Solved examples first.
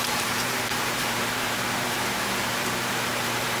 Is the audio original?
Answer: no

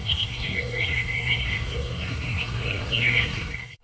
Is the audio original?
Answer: no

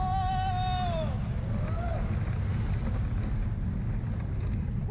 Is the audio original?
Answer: yes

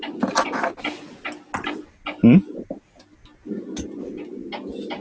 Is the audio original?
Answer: yes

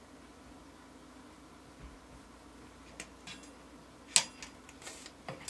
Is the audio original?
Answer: yes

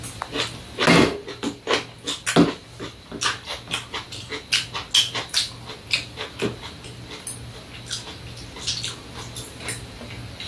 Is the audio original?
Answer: yes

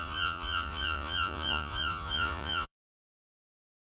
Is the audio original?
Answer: no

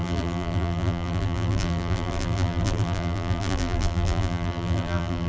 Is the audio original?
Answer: no